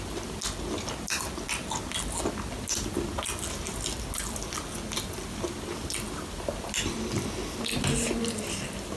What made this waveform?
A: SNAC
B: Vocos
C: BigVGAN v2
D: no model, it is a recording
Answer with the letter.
D